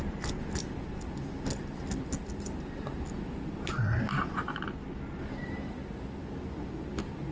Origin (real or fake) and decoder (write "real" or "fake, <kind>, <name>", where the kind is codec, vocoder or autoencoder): real